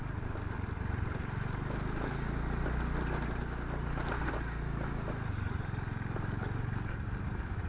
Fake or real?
real